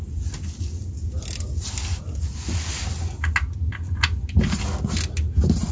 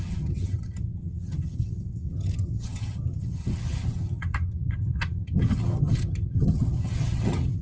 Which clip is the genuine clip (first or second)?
first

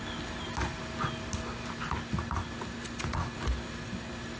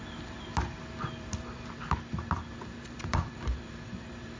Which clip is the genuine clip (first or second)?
first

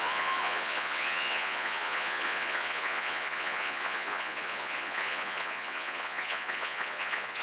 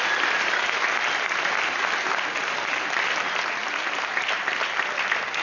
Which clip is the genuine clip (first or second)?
second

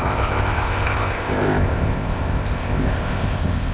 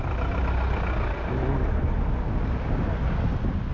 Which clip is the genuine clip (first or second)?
second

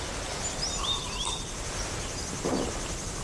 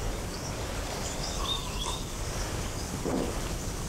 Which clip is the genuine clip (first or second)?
first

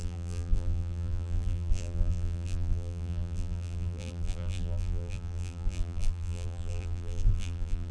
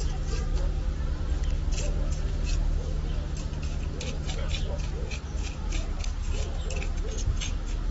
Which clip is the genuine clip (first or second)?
second